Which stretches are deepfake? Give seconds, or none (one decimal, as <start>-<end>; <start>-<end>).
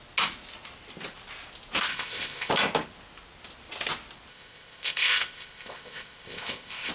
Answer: 1.9-2.5; 4.3-6.9